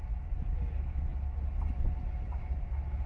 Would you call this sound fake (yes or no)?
no